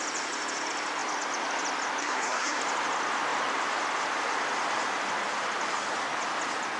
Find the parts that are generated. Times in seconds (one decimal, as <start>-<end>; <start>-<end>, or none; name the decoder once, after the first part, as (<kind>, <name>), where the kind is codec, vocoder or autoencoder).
2.0-2.6 (codec, SNAC)